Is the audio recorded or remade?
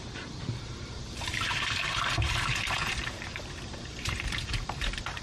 remade